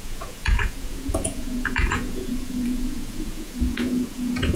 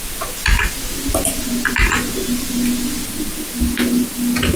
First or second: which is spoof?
first